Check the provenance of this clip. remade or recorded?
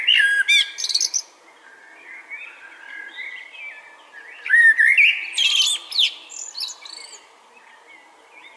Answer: recorded